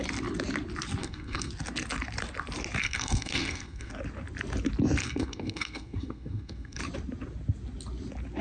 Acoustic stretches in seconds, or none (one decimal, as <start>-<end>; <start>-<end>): 0.0-1.0; 1.5-2.8; 3.9-5.0; 6.8-8.4